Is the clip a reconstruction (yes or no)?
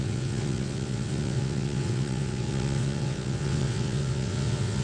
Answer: yes